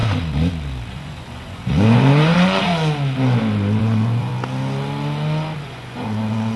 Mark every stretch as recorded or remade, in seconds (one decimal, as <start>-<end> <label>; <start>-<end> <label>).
0.0-0.9 recorded; 0.9-2.7 remade; 2.7-3.8 recorded; 3.8-4.3 remade; 4.3-5.6 recorded; 5.6-6.6 remade